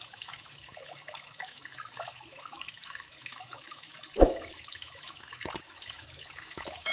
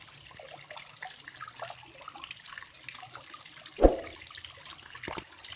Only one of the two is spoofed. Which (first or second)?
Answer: first